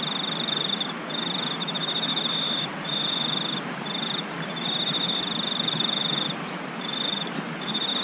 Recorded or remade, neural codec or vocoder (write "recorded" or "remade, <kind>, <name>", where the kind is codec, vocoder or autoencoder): recorded